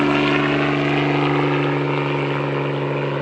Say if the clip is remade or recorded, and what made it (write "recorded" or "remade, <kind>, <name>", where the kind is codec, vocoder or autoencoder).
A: recorded